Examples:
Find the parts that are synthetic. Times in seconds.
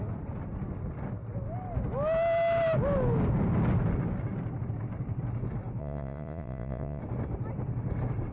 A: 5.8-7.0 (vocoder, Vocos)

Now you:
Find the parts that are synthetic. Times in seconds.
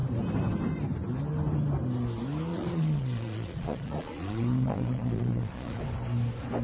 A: 2.5-5.8 (vocoder, Vocos)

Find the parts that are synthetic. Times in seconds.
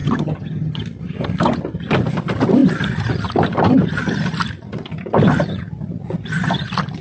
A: 0.0-0.8 (vocoder, HiFi-GAN)